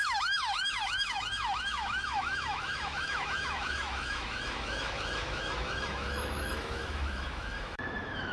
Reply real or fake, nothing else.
fake